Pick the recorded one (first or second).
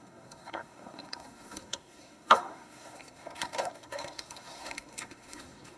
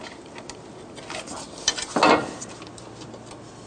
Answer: second